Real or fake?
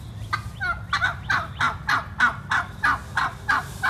real